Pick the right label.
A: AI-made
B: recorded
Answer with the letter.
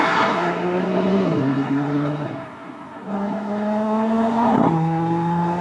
A